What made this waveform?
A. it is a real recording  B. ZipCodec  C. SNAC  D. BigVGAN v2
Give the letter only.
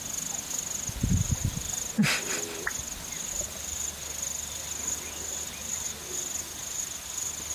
A